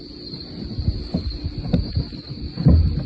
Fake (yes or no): no